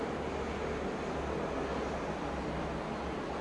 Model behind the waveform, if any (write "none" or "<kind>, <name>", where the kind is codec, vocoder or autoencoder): none